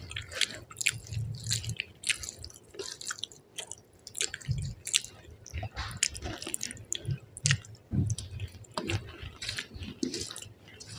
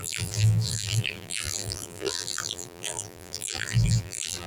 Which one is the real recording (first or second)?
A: first